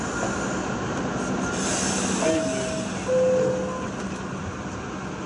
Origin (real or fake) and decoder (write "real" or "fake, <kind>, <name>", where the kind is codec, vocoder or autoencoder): real